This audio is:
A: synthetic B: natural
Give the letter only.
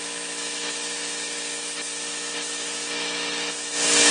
A